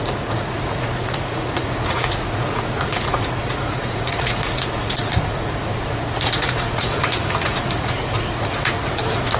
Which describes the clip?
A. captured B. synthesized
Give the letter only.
B